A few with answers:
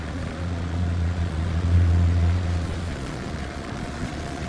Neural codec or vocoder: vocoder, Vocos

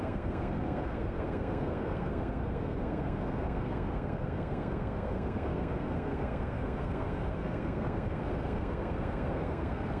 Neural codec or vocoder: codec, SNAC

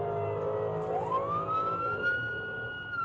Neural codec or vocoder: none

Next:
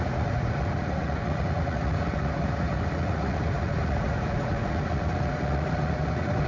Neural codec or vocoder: vocoder, Vocos